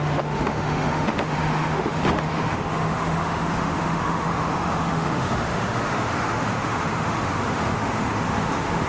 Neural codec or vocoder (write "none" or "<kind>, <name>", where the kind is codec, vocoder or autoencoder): autoencoder, DAC-VAE